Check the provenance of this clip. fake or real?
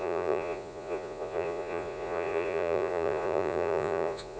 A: fake